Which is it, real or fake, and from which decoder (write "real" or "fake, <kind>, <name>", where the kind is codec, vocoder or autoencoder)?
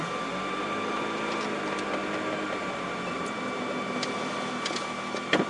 real